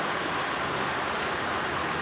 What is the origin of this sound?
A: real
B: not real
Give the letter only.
A